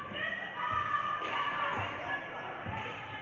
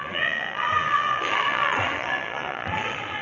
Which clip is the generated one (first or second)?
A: second